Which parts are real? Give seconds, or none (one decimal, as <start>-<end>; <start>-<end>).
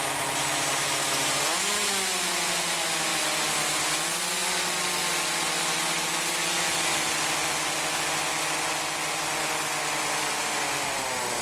0.0-11.4